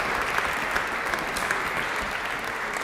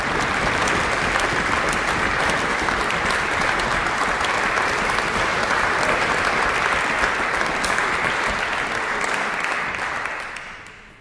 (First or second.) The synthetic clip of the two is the second